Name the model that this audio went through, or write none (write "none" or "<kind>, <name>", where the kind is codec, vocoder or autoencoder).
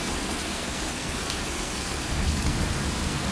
codec, SNAC